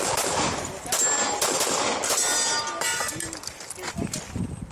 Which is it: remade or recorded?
recorded